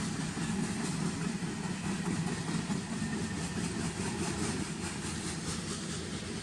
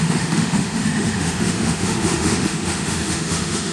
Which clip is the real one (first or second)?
first